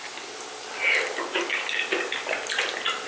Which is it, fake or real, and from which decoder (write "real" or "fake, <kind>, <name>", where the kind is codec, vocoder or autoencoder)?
real